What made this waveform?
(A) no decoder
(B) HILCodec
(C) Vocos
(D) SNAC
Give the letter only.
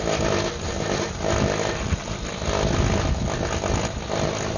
A